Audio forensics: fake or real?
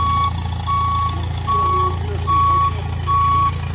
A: real